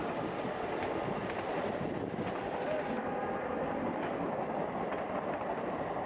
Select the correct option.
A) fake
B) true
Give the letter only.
B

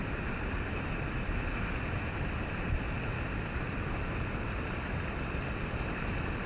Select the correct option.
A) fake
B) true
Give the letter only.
B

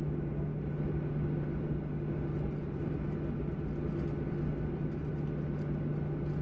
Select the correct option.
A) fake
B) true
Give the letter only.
B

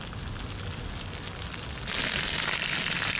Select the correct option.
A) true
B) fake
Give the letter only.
A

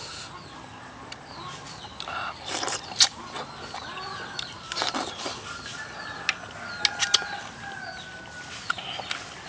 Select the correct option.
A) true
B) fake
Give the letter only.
A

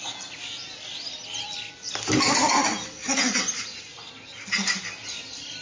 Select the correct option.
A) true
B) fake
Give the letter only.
A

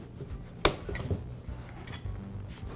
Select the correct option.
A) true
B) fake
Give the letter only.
A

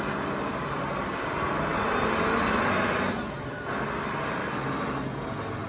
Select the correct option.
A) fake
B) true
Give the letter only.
B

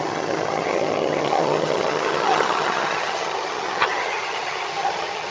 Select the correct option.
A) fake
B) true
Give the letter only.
A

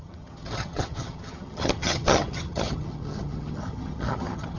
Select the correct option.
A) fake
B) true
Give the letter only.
A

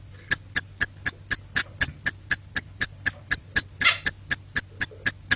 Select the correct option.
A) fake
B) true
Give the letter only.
B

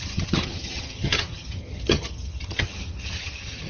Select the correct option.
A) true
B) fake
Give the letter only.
B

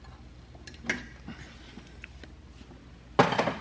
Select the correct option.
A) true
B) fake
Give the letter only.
A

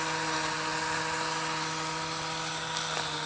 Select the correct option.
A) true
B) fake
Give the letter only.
A